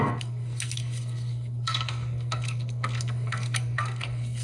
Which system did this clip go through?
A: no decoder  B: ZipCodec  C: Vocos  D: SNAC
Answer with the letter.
D